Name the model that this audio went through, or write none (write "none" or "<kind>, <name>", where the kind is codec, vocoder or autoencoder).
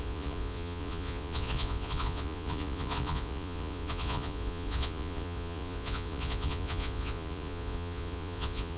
vocoder, Vocos